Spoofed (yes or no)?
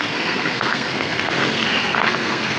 yes